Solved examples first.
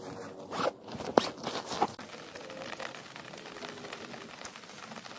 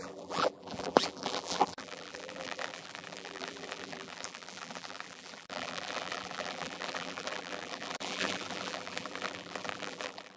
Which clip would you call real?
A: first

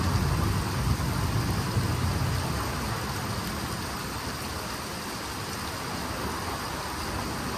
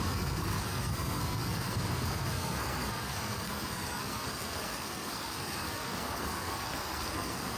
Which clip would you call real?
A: first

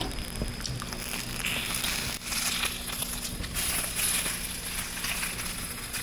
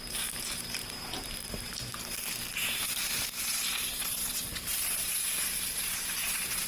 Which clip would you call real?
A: first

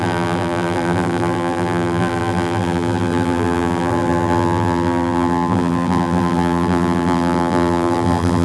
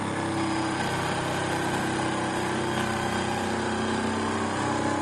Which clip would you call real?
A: second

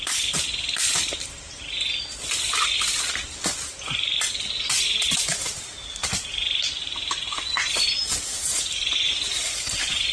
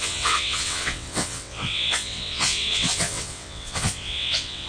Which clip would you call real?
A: first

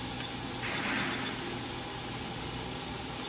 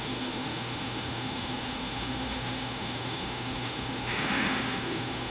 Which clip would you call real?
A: first